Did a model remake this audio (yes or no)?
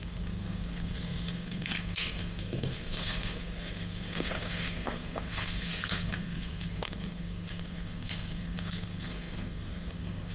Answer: yes